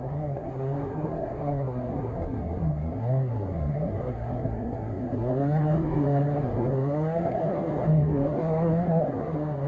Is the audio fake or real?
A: fake